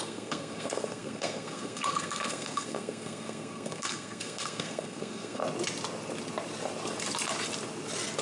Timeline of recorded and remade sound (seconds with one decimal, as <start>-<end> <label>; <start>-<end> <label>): 0.0-5.4 remade; 5.4-8.2 recorded